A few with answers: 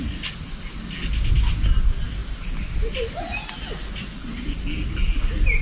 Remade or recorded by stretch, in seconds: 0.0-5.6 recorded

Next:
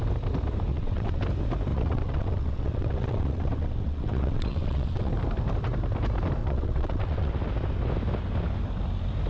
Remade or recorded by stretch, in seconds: 0.0-0.7 recorded; 0.7-1.2 remade; 1.2-1.7 recorded; 1.7-5.1 remade; 5.1-6.4 recorded; 6.4-7.3 remade; 7.3-9.3 recorded

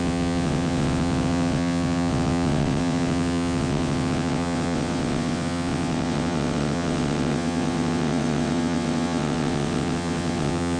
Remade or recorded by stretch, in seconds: 0.0-10.8 remade